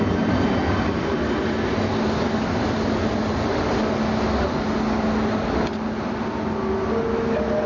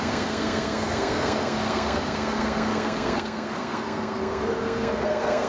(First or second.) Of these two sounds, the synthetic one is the second